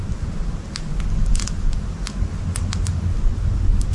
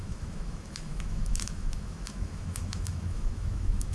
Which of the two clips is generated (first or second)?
second